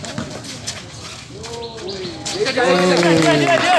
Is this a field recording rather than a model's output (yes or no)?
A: yes